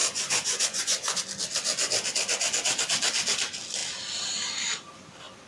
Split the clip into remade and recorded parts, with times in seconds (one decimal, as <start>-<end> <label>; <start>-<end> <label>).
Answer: 0.0-1.2 remade; 1.2-5.5 recorded